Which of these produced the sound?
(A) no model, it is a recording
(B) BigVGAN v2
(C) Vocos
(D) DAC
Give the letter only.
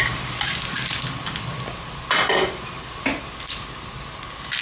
A